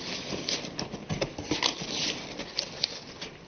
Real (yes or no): yes